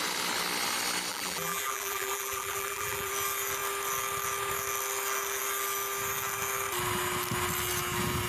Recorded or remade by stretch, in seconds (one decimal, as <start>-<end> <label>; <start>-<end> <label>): 0.0-1.1 recorded; 1.1-3.1 remade; 3.1-8.3 recorded